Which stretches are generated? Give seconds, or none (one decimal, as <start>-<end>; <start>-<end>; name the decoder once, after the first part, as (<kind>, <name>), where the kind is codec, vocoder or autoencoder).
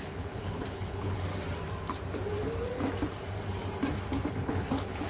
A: 0.0-1.3 (codec, HILCodec); 4.3-5.1